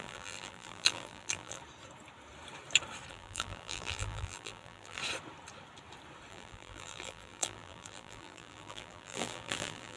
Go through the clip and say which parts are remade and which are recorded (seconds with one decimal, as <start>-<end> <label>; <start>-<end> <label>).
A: 0.0-1.6 remade; 1.6-3.1 recorded; 3.1-5.0 remade; 5.0-6.3 recorded; 6.3-10.0 remade